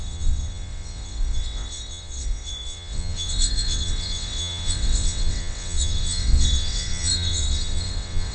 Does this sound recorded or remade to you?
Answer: remade